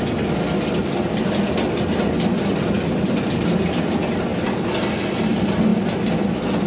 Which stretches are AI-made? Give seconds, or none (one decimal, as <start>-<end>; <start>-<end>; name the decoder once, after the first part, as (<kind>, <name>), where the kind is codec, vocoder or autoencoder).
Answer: none